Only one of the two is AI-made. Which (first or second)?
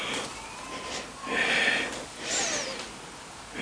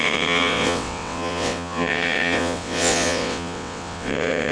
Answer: second